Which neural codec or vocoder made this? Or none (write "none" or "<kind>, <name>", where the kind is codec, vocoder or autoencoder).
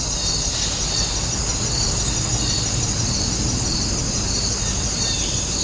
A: none